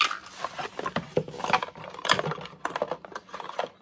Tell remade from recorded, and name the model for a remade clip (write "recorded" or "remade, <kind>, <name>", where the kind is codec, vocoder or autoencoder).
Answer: recorded